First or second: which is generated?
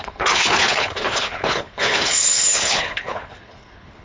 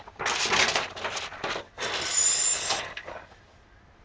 first